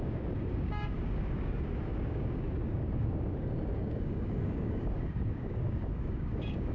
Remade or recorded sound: remade